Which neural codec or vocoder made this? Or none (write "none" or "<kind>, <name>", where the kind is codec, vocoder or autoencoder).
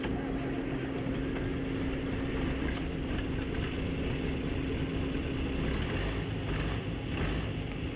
none